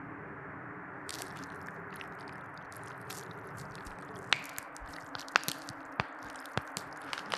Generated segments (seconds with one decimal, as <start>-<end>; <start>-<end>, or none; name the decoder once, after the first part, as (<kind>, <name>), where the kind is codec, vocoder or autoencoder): none